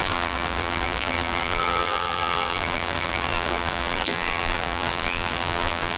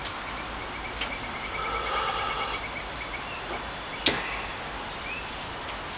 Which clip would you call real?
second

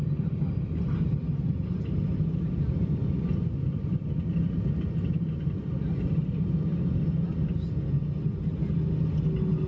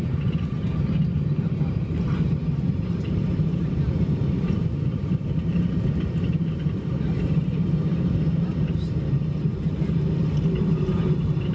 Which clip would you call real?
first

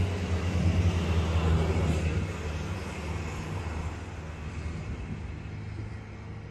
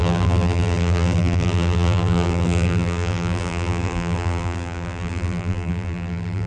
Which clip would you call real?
first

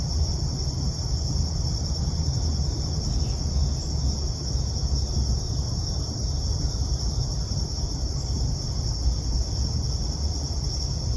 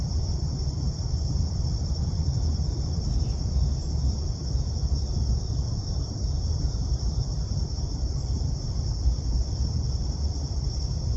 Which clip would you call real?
first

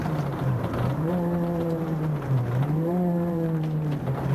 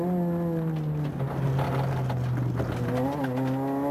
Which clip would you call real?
second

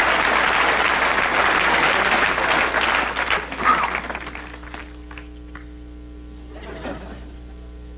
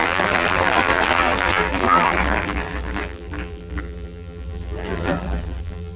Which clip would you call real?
first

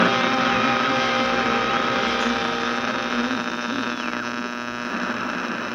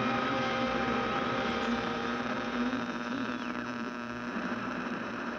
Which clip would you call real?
first